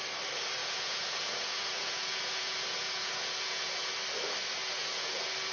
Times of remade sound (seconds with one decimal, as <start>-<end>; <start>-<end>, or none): 0.6-3.9; 4.6-5.1